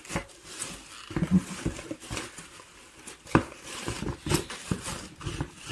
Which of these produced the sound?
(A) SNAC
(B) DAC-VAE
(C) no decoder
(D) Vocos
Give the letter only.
C